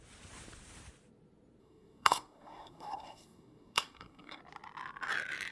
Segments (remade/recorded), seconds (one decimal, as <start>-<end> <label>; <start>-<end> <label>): 0.0-1.6 recorded; 1.6-4.4 remade; 4.4-5.5 recorded